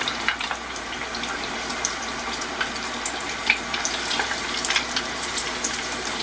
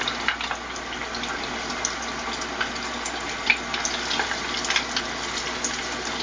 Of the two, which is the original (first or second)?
second